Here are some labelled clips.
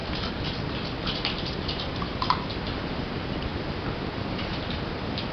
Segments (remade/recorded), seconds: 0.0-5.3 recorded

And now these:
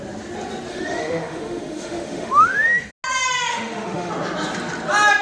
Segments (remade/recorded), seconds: 0.0-0.7 recorded; 0.7-2.9 remade; 2.9-3.5 recorded; 3.5-4.1 remade; 4.1-5.2 recorded

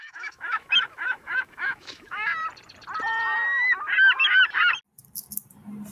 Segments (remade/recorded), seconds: 0.0-2.3 remade; 2.3-5.9 recorded